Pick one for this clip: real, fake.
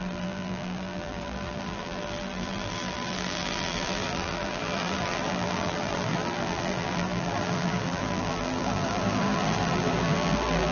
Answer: fake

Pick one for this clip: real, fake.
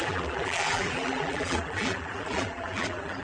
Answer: fake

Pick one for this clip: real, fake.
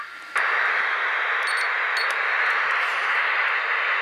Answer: real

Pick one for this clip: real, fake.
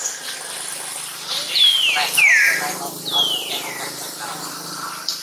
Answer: real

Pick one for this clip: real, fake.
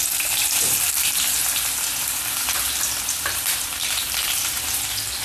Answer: fake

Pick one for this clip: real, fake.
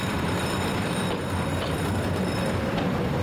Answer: fake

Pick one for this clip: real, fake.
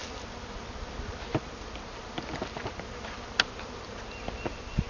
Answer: real